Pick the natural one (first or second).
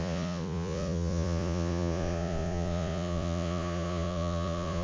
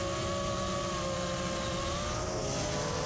second